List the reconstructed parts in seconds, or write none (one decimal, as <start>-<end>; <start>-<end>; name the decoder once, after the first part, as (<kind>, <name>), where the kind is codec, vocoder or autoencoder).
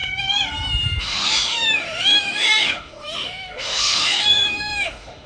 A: 1.0-5.3 (autoencoder, DAC-VAE)